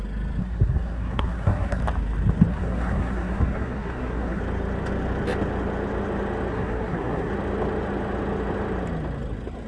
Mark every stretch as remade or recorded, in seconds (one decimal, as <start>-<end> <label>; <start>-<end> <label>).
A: 0.0-0.4 recorded; 0.4-1.8 remade; 1.8-2.5 recorded; 2.5-4.4 remade; 4.4-6.5 recorded; 6.5-7.3 remade; 7.3-9.7 recorded